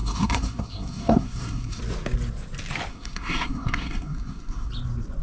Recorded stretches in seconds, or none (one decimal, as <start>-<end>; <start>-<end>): 1.8-2.9; 4.7-5.2